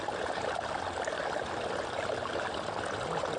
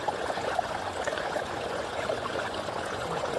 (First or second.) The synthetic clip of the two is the second